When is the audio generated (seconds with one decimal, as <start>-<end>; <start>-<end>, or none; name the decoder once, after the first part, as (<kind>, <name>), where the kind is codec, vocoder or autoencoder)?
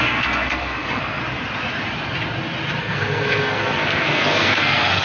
0.0-1.2 (codec, SNAC); 2.8-5.0